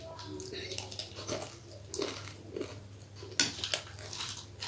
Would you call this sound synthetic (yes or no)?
no